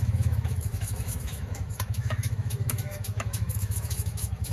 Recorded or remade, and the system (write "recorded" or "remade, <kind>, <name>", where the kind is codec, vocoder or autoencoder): remade, autoencoder, DAC-VAE